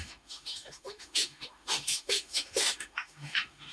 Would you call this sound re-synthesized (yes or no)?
yes